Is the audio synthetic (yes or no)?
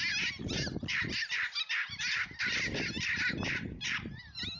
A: no